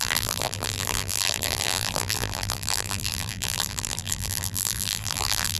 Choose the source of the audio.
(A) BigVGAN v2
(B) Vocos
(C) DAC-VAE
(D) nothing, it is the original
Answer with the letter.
A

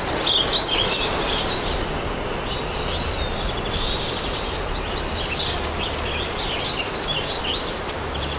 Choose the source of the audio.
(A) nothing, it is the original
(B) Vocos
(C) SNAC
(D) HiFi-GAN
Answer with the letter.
A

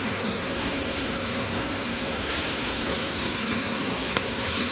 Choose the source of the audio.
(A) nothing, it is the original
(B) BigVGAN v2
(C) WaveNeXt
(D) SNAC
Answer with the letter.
D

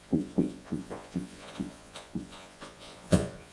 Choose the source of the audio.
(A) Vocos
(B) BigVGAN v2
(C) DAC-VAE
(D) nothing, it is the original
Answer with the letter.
A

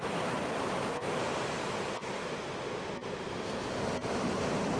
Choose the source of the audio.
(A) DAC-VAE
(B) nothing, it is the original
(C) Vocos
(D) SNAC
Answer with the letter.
B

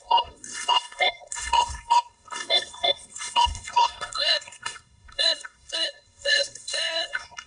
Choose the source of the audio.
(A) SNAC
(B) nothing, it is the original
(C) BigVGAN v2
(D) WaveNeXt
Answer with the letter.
A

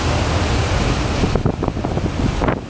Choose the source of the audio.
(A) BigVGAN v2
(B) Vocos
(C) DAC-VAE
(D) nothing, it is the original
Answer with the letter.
D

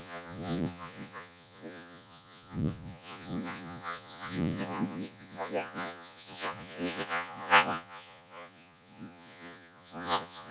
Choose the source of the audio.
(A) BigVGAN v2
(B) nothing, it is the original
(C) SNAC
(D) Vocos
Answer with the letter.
D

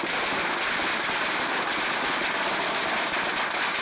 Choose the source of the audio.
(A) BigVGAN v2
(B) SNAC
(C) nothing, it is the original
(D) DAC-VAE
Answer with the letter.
A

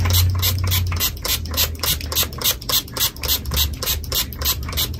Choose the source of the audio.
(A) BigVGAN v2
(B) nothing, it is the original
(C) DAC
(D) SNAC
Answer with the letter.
B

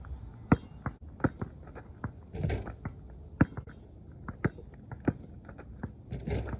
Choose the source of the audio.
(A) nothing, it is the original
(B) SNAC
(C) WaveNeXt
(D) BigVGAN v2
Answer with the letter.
A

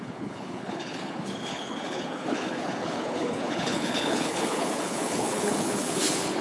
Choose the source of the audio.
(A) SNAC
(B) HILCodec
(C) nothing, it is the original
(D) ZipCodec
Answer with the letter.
B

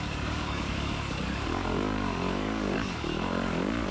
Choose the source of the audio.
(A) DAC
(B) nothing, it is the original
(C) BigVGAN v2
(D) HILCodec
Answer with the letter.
A